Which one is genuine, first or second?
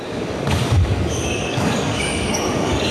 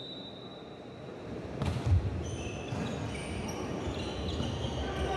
second